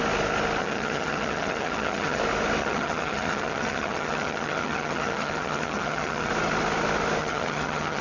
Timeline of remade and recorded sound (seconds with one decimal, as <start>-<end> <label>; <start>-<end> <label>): 0.0-0.6 recorded; 0.6-2.2 remade; 2.2-2.6 recorded; 2.6-6.3 remade; 6.3-7.2 recorded; 7.2-8.0 remade